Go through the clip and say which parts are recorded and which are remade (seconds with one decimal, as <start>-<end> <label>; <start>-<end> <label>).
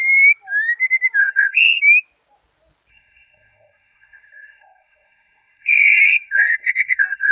0.0-1.2 recorded; 1.2-1.8 remade; 1.8-2.9 recorded; 2.9-7.3 remade